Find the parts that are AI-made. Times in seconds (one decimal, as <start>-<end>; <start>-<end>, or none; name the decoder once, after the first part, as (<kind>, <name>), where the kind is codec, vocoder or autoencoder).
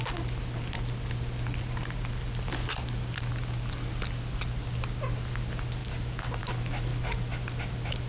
none